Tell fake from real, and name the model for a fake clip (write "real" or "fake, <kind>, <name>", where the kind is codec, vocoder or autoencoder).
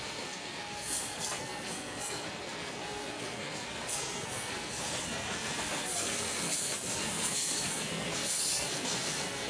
fake, codec, SNAC